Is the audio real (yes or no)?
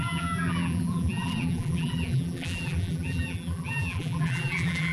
no